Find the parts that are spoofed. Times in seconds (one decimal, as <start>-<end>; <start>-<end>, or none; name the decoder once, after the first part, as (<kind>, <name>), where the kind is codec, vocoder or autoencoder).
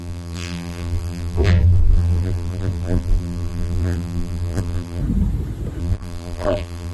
0.0-5.0 (vocoder, BigVGAN v2); 5.8-6.9